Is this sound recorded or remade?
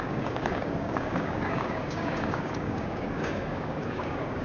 remade